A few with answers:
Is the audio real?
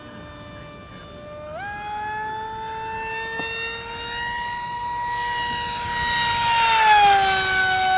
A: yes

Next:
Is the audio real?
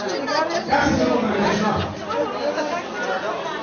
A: yes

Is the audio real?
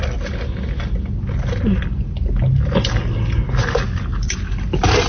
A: yes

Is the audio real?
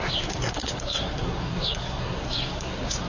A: no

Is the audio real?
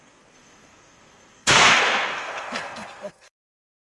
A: no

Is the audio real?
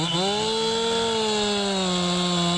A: yes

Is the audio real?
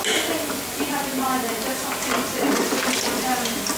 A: yes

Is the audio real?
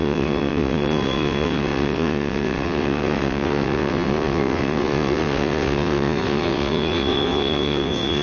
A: no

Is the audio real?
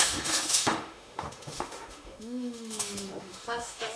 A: no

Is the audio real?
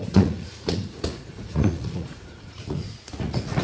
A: no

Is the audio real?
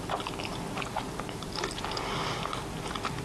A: yes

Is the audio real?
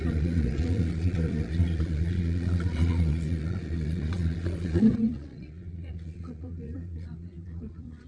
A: no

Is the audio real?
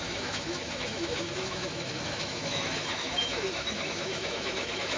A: no